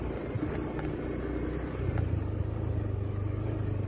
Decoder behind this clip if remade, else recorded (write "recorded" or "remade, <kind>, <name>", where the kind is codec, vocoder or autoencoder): recorded